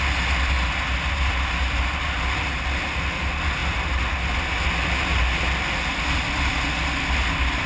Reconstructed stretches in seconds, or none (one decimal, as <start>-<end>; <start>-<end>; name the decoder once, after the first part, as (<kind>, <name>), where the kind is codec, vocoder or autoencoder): none